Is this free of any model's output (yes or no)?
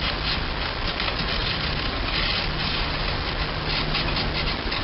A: yes